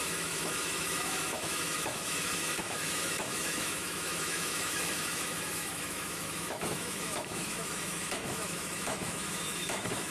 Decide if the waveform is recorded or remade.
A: remade